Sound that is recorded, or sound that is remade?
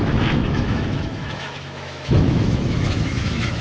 remade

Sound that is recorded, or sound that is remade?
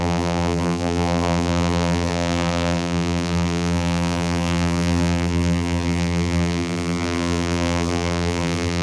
remade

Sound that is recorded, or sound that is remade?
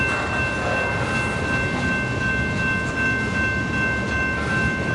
recorded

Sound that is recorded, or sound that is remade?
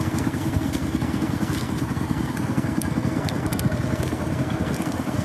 remade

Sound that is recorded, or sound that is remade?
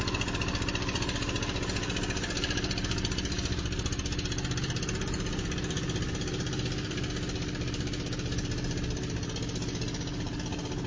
recorded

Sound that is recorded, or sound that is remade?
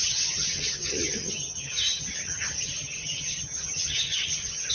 remade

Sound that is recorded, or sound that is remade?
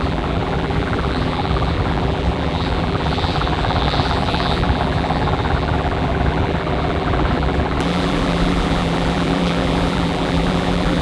remade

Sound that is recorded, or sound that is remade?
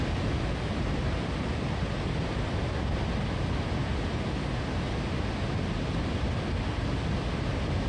recorded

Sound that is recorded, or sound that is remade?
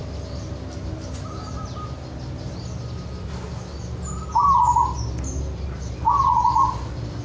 recorded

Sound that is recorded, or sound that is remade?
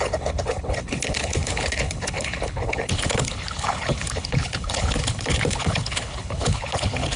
remade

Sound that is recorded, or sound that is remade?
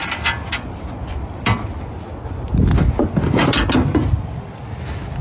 recorded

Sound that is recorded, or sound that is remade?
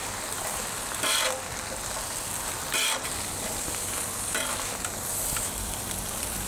remade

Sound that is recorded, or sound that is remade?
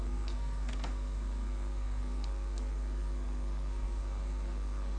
remade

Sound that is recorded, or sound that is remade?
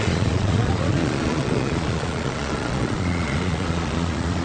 remade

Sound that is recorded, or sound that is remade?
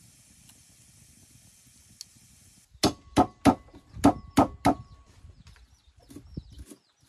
recorded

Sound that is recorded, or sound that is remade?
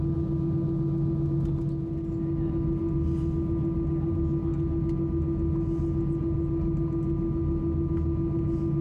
recorded